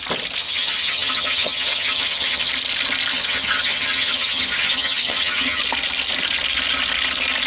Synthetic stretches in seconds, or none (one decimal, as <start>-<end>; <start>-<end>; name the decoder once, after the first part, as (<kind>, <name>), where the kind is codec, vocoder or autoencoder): 0.4-2.5 (vocoder, HiFi-GAN); 3.1-5.6